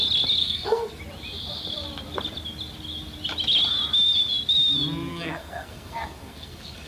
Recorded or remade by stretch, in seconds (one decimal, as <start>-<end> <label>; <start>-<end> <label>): 0.0-0.4 recorded; 0.4-1.0 remade; 1.0-5.1 recorded; 5.1-6.9 remade